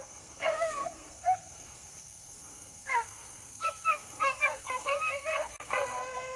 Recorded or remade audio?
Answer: remade